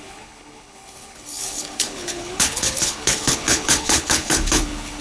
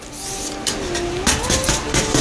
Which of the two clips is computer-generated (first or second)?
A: first